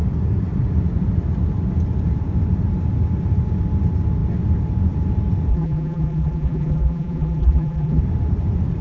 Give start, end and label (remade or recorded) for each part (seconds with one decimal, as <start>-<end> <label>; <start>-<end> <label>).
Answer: 0.0-5.5 recorded; 5.5-8.0 remade; 8.0-8.8 recorded